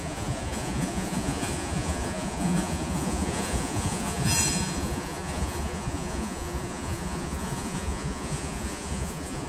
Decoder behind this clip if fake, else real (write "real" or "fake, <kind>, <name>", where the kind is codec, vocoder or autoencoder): fake, vocoder, Vocos